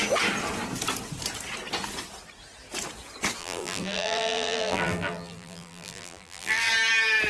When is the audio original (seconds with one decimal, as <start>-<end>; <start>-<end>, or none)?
0.0-3.4; 6.7-7.3